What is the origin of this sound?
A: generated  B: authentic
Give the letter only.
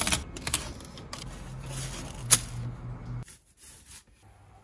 B